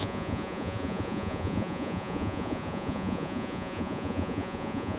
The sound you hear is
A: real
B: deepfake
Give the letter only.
B